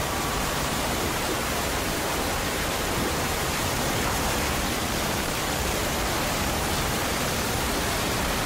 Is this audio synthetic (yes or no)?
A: yes